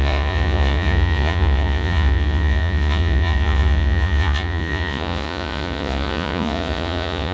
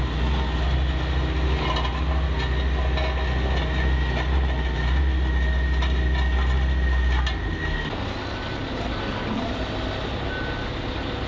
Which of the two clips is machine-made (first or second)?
first